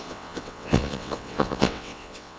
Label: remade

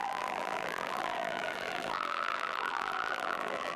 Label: remade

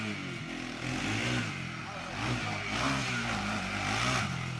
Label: recorded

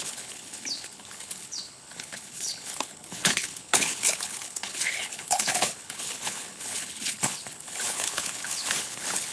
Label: remade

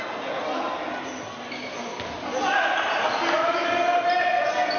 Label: recorded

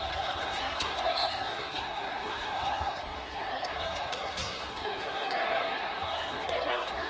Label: remade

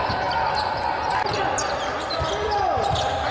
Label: recorded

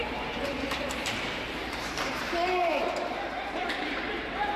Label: remade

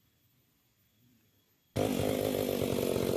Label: recorded